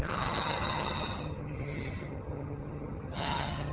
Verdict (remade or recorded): remade